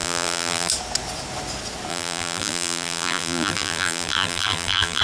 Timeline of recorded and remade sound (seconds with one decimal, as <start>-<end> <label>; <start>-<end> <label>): 0.0-0.7 remade; 0.7-1.9 recorded; 1.9-5.0 remade